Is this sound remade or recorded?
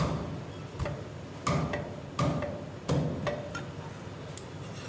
recorded